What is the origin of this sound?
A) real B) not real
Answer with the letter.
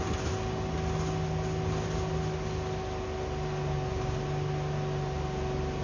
A